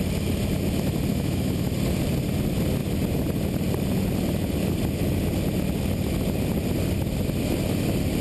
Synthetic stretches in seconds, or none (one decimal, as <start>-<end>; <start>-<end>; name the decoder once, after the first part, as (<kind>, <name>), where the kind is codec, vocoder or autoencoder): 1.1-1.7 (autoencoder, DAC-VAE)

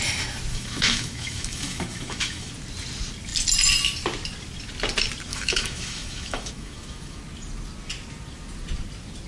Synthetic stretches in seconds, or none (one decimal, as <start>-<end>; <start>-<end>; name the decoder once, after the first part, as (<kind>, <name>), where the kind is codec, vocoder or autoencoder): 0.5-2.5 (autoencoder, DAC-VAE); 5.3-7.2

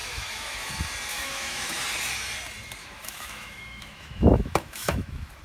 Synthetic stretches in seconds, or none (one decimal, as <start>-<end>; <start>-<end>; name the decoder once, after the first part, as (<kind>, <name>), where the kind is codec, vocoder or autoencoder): 0.0-0.7 (autoencoder, DAC-VAE); 1.1-1.8; 2.8-5.4

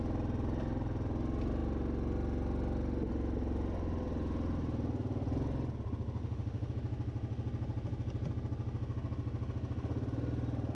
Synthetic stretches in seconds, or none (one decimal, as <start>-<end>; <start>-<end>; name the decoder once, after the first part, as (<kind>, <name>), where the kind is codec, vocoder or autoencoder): 6.2-6.7 (autoencoder, DAC-VAE)

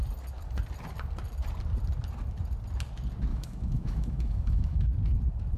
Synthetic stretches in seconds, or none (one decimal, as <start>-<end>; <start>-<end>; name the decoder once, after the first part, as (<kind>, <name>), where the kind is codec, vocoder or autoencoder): 3.3-4.9 (autoencoder, DAC-VAE)

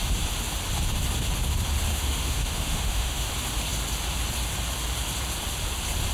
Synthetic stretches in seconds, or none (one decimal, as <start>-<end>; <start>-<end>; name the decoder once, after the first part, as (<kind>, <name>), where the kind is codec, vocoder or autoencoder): 1.9-3.3 (autoencoder, DAC-VAE)